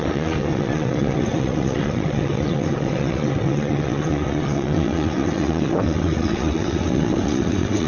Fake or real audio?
fake